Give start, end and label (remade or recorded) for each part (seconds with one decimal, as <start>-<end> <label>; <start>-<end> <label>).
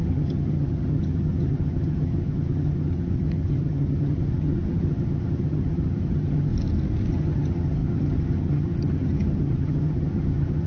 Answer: 0.0-6.5 remade; 6.5-7.1 recorded; 7.1-10.7 remade